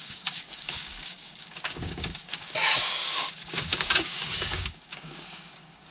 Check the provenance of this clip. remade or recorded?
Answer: remade